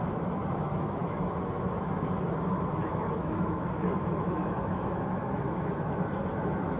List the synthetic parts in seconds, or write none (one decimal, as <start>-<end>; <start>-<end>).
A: 0.0-6.8